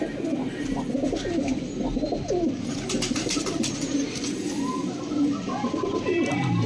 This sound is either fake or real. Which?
real